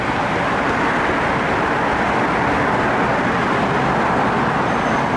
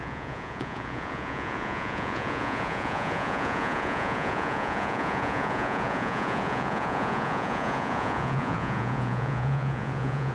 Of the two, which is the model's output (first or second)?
second